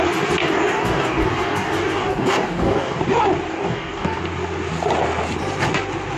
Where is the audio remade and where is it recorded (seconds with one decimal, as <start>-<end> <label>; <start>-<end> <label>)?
0.0-0.4 recorded; 0.4-3.0 remade; 3.0-3.5 recorded; 3.5-4.2 remade; 4.2-6.2 recorded